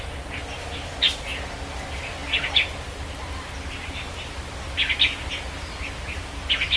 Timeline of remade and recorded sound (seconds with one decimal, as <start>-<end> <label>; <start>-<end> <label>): 0.0-6.8 recorded